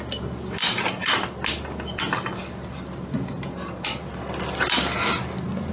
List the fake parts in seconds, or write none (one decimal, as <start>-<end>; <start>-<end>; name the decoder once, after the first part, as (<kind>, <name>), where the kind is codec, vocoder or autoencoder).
none